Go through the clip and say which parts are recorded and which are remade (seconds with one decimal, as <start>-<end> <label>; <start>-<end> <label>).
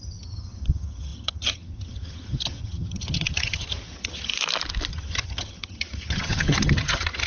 0.0-4.3 remade; 4.3-4.9 recorded; 4.9-7.3 remade